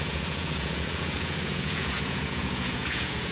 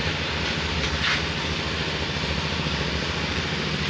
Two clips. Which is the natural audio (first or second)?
second